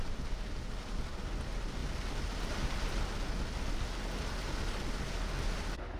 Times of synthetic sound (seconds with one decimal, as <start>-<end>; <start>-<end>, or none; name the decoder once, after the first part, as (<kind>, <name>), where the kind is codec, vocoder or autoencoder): none